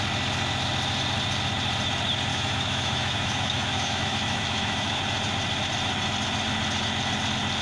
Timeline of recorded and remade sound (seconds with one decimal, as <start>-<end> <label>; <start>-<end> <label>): 0.0-2.3 recorded; 2.3-5.0 remade; 5.0-7.6 recorded